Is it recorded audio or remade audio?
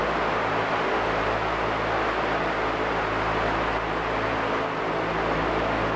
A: recorded